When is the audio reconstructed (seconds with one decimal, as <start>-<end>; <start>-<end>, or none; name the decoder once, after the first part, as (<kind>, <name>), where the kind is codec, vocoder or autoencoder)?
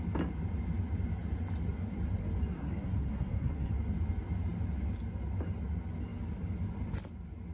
2.6-3.7 (codec, SNAC)